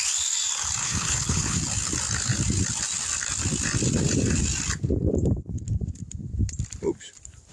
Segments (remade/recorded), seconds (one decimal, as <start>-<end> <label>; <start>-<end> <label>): 0.0-0.8 recorded; 0.8-1.6 remade; 1.6-7.5 recorded